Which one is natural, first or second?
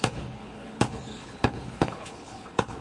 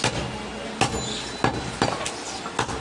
second